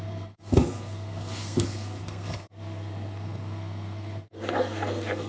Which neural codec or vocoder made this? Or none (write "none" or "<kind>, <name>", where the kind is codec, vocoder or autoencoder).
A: codec, SNAC